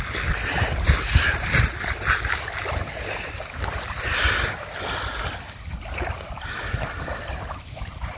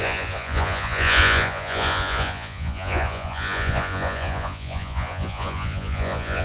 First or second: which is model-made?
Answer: second